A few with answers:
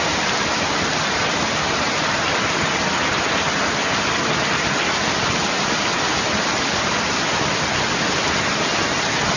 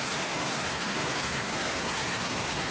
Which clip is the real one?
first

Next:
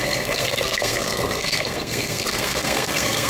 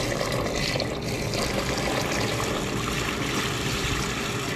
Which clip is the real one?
second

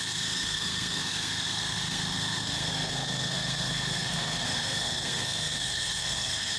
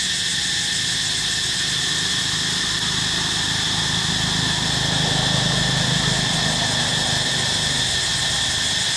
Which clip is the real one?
second